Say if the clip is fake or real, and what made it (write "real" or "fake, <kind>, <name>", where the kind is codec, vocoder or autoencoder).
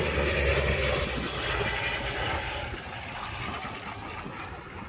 real